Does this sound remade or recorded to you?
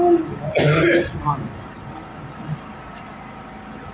recorded